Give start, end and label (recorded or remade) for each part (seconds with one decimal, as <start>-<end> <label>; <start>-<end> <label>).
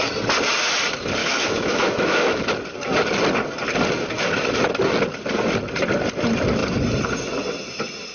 0.0-1.2 recorded; 1.2-2.4 remade; 2.4-8.1 recorded